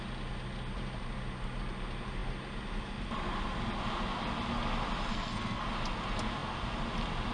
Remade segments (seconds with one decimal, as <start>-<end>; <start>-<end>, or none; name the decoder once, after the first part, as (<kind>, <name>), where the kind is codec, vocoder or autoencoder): 5.1-5.6 (codec, SNAC)